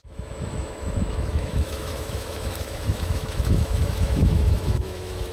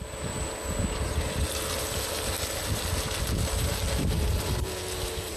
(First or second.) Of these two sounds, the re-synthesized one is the first